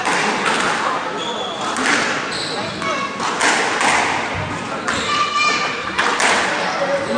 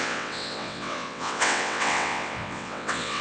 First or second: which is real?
first